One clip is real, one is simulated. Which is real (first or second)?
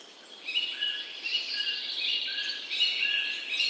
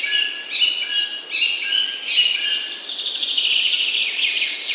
second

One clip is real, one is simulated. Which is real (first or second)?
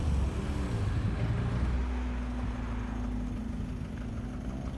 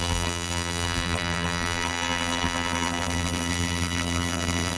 first